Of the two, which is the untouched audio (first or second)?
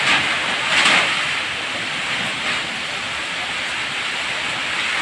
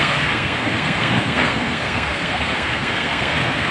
first